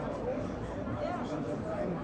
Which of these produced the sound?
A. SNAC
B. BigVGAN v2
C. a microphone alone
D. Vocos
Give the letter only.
B